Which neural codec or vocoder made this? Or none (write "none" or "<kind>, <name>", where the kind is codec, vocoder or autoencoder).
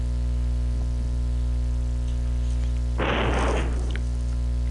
none